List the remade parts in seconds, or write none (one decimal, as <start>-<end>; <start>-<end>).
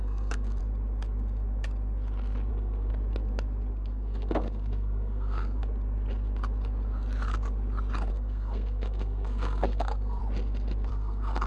0.0-0.6; 2.5-2.9; 3.7-5.6; 8.1-10.2; 10.9-11.5